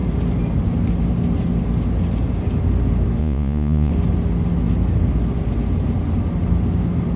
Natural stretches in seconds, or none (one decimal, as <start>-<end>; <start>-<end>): 0.0-3.2; 3.9-7.2